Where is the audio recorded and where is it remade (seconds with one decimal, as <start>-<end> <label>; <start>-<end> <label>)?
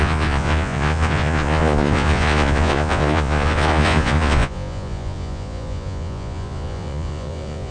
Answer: 0.0-7.7 remade